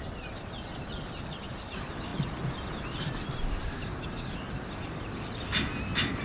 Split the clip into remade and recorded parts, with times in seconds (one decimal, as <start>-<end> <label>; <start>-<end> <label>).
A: 0.0-6.2 recorded